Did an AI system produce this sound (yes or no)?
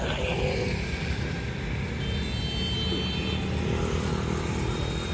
no